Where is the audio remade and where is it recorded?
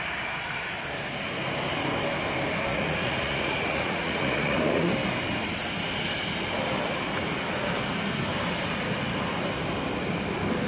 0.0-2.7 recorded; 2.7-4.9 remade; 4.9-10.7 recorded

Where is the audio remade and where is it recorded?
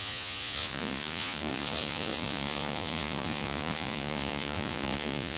0.0-5.4 remade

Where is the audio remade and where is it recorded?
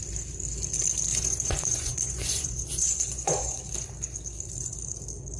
0.0-1.1 recorded; 1.1-3.7 remade; 3.7-5.4 recorded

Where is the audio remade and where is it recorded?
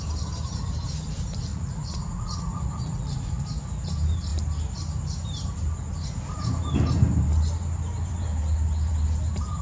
0.0-1.5 recorded; 1.5-3.4 remade; 3.4-9.6 recorded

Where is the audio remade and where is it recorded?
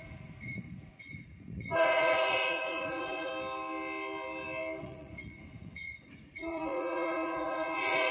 0.0-3.3 remade; 3.3-4.8 recorded; 4.8-8.1 remade